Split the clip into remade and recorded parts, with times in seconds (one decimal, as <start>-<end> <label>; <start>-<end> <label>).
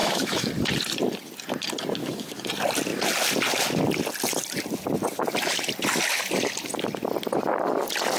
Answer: 0.0-0.5 remade; 0.5-2.0 recorded; 2.0-2.5 remade; 2.5-8.2 recorded